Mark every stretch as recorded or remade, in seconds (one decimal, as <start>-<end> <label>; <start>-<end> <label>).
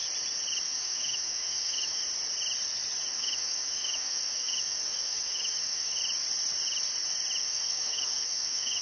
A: 0.0-0.6 recorded; 0.6-2.0 remade; 2.0-3.2 recorded; 3.2-6.0 remade; 6.0-7.4 recorded; 7.4-8.8 remade